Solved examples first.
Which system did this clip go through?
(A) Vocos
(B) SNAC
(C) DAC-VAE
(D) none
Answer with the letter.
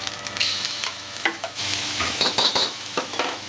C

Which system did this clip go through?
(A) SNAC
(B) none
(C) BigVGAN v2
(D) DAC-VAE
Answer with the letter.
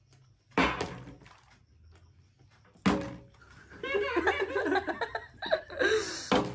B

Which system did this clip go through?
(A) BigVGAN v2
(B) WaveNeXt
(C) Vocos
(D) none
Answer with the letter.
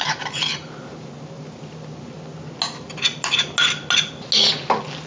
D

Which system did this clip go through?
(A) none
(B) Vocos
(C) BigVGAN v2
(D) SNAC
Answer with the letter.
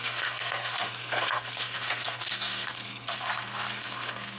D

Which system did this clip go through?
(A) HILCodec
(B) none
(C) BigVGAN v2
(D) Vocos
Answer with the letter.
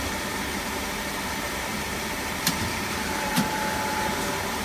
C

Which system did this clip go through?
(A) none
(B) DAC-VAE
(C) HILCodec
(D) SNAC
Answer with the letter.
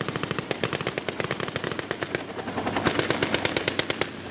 A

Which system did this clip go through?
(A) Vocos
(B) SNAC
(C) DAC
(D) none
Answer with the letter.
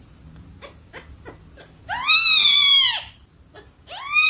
D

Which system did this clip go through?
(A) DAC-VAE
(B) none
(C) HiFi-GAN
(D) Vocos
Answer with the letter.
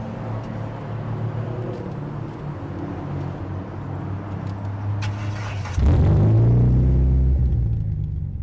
B